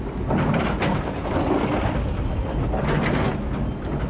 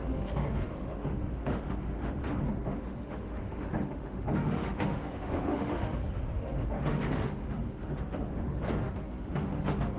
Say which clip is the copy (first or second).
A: second